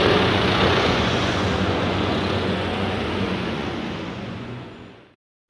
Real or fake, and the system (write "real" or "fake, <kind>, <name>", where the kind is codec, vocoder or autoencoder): fake, vocoder, Vocos